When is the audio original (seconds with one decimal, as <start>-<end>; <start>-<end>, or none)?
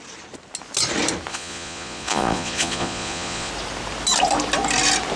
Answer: 0.0-1.3; 3.5-5.2